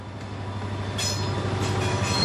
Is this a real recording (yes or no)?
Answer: yes